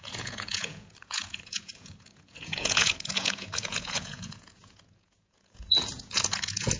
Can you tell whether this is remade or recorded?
remade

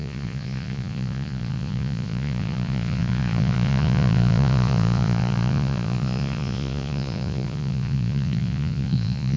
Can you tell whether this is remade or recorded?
remade